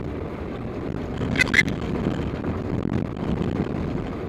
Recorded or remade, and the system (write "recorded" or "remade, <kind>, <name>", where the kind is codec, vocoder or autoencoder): recorded